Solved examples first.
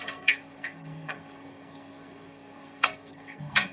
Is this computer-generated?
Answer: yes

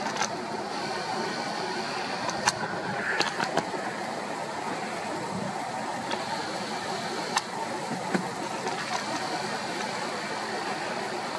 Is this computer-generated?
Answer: no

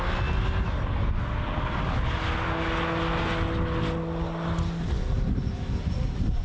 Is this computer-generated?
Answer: no